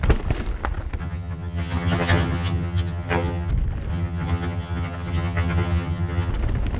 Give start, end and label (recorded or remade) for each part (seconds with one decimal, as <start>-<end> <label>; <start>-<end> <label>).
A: 0.0-1.0 recorded; 1.0-3.5 remade; 3.5-3.9 recorded; 3.9-6.3 remade; 6.3-6.8 recorded